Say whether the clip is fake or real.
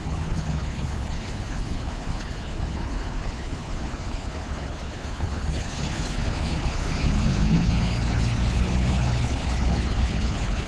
fake